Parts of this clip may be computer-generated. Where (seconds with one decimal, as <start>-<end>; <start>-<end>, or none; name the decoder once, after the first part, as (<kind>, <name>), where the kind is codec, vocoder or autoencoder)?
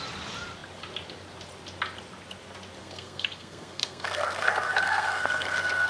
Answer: 2.8-5.9 (codec, SNAC)